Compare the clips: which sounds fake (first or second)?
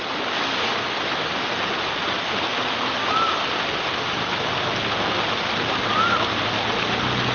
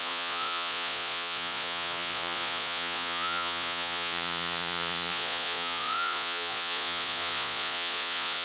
second